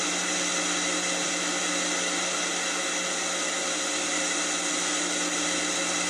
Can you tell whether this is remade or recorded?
recorded